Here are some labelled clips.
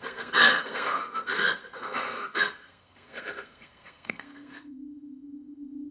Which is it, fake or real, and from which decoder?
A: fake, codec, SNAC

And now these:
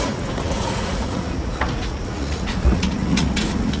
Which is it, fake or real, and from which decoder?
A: fake, vocoder, Vocos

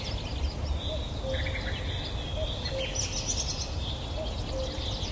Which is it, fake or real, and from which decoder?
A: real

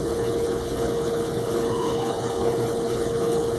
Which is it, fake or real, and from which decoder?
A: fake, codec, HILCodec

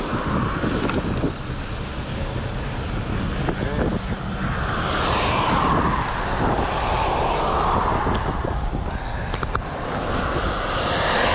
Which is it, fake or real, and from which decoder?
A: real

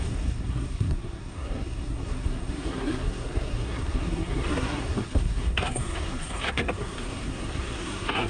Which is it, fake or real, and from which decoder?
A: fake, codec, SNAC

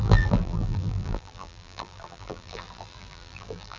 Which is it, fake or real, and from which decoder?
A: fake, vocoder, BigVGAN v2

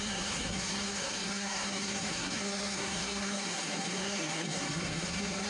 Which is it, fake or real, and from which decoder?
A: fake, codec, SNAC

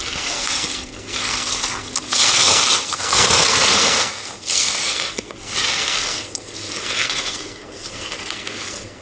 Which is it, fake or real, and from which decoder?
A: fake, codec, SNAC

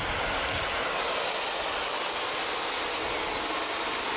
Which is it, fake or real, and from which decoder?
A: real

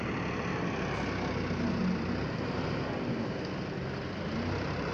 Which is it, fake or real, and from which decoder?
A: real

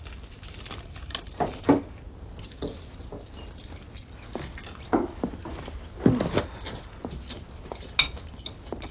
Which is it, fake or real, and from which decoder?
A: real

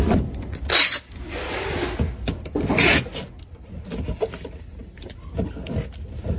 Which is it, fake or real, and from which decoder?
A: real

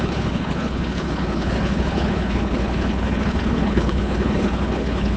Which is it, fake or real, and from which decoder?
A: fake, codec, HILCodec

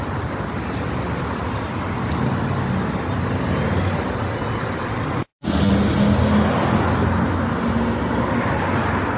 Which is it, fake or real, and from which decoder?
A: real